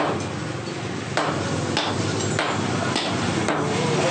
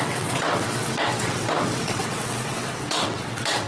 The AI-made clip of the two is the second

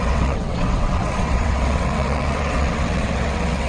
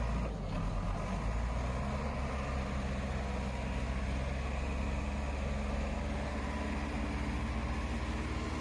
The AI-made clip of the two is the first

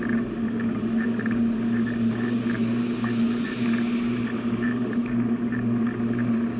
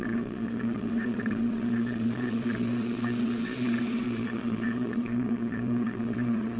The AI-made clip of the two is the second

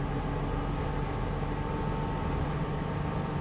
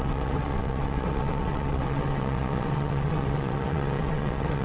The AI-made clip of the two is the second